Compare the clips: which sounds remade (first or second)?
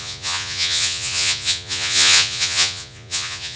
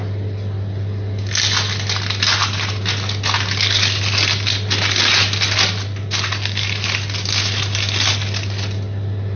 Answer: first